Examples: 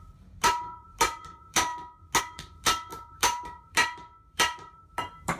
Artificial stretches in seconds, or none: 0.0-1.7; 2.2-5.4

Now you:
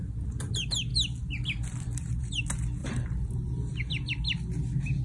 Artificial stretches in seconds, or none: 2.8-3.6